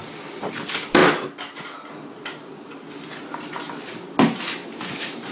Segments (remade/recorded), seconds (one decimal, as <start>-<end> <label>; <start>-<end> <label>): 0.0-5.3 recorded